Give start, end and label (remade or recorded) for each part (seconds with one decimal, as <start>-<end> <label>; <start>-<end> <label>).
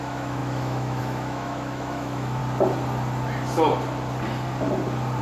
0.0-2.4 remade; 2.4-5.2 recorded